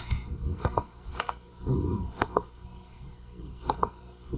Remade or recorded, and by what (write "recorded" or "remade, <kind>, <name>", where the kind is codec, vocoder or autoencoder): remade, codec, SNAC